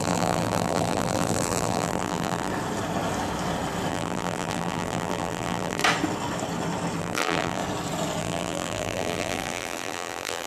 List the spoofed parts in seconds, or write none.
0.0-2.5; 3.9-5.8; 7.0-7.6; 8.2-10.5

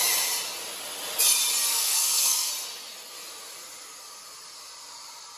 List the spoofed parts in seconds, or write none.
1.7-2.5

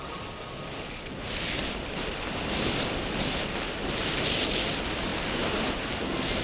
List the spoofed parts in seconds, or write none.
none

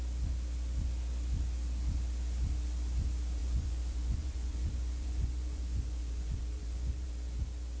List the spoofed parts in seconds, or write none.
3.4-7.1

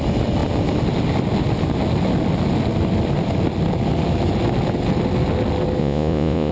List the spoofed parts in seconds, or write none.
5.8-6.5

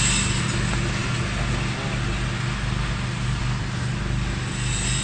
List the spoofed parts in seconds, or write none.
none

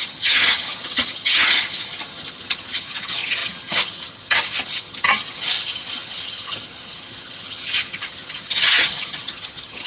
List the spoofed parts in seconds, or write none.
0.0-9.9